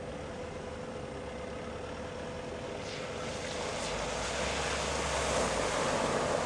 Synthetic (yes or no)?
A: no